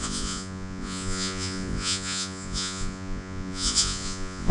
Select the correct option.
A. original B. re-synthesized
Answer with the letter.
B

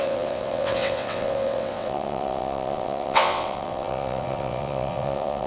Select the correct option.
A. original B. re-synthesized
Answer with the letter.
B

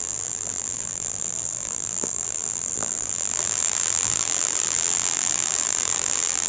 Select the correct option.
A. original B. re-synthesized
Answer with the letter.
B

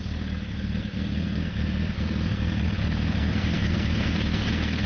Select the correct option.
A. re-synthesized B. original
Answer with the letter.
A